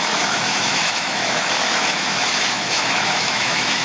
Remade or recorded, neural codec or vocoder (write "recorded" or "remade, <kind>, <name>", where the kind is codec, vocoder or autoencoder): remade, autoencoder, DAC-VAE